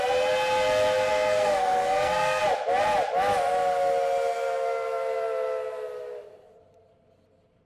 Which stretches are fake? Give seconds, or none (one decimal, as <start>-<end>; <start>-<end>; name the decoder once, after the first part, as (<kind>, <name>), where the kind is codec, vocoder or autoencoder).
1.1-2.4 (codec, SNAC)